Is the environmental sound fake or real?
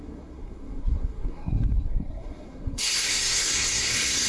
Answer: fake